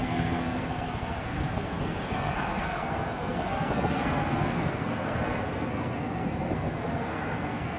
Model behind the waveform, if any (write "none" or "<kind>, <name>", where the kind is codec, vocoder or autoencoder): codec, SNAC